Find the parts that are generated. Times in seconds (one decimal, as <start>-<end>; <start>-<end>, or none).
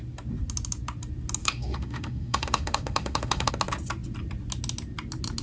1.4-3.5